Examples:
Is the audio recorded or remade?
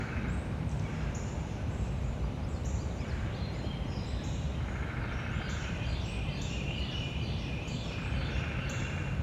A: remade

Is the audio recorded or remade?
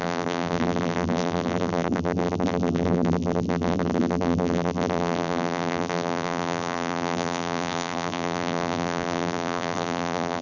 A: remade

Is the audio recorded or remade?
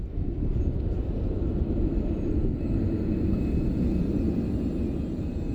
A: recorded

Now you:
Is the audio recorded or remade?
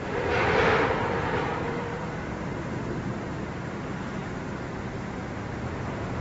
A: remade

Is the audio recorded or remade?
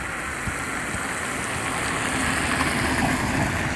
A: recorded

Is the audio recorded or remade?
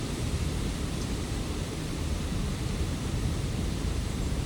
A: remade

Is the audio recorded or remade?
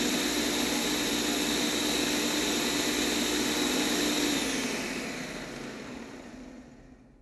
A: recorded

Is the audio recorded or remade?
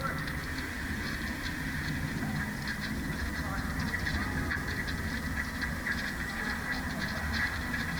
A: recorded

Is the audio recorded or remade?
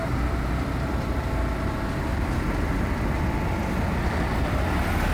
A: recorded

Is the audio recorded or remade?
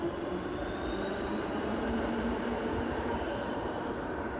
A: remade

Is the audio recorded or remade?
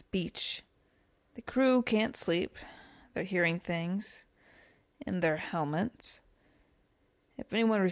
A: recorded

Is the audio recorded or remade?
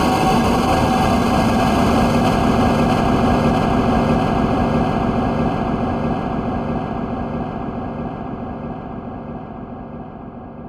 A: remade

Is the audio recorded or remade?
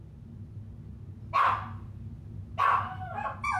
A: recorded